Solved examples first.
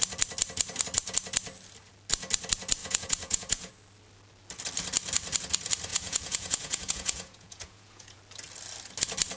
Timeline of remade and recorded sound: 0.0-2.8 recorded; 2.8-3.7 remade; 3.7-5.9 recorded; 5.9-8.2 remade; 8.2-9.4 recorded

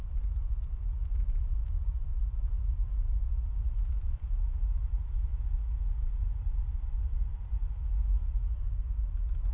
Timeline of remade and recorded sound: 0.0-1.0 recorded; 1.0-4.6 remade; 4.6-5.3 recorded; 5.3-6.4 remade; 6.4-9.5 recorded